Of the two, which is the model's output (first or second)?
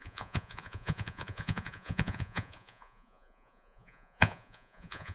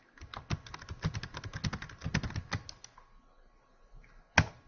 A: first